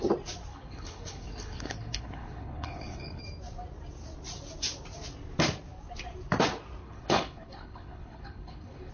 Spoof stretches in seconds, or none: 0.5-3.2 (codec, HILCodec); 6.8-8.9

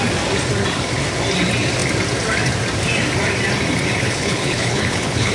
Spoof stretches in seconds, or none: 4.0-5.3 (codec, HILCodec)

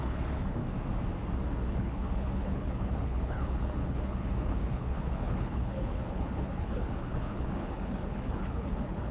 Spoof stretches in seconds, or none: 0.0-0.6 (codec, HILCodec); 1.5-9.1

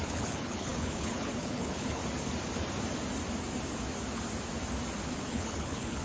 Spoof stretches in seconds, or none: 0.0-2.0 (codec, HILCodec); 5.1-6.0

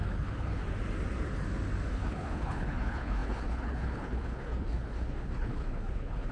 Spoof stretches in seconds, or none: 0.0-0.6 (codec, HILCodec); 1.9-6.3

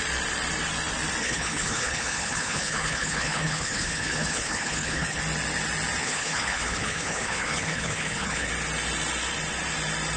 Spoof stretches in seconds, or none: 1.2-5.2 (codec, HILCodec); 6.0-8.5

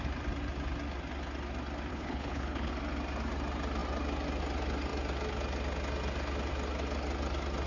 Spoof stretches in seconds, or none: 1.9-2.7 (codec, HILCodec)

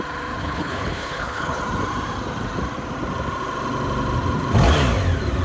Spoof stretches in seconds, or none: 0.4-1.6 (codec, HILCodec)